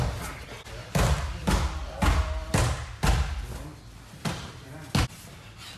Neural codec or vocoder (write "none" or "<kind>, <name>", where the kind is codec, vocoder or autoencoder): none